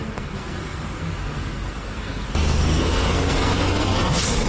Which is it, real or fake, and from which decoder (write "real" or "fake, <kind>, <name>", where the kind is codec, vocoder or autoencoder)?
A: fake, codec, SNAC